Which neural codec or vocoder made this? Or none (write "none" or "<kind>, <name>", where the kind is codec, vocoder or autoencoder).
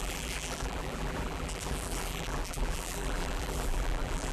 vocoder, BigVGAN v2